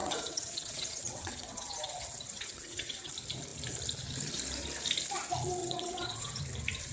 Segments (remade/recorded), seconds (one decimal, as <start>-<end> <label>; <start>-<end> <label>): 0.0-3.1 remade; 3.1-5.6 recorded; 5.6-6.4 remade; 6.4-6.9 recorded